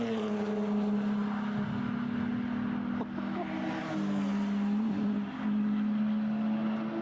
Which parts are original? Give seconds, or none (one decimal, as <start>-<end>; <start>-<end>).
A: 0.0-7.0